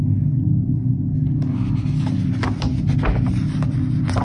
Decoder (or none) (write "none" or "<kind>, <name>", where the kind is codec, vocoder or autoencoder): none